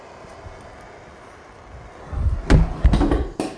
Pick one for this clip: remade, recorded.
recorded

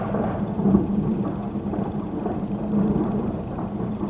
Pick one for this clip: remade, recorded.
remade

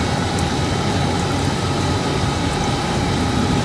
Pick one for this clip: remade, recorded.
recorded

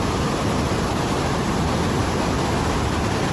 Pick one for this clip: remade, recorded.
remade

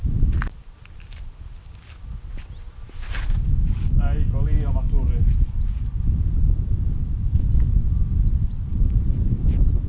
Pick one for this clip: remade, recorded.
recorded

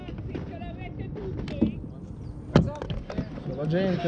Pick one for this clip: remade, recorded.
recorded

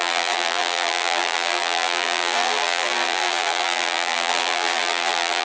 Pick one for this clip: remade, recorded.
remade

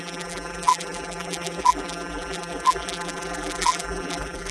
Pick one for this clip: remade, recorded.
remade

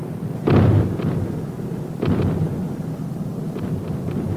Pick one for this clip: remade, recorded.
recorded